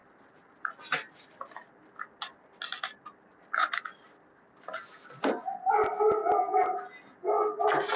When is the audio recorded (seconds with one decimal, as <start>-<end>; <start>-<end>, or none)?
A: 0.0-3.6; 4.7-8.0